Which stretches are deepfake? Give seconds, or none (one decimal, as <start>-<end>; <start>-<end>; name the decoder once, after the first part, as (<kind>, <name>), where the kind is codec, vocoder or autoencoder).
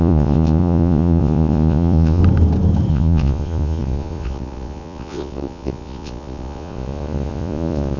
0.0-2.2 (vocoder, Vocos); 2.9-8.0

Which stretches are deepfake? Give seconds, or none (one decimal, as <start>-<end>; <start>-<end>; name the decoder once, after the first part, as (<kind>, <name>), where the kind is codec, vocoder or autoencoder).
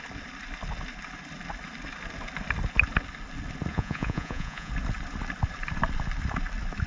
3.7-4.7 (vocoder, Vocos)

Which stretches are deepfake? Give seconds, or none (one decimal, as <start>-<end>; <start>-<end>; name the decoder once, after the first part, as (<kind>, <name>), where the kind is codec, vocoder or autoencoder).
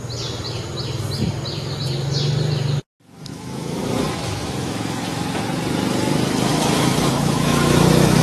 3.3-5.4 (autoencoder, DAC-VAE); 6.5-8.2